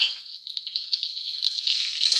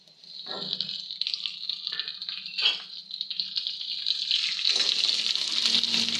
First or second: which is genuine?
second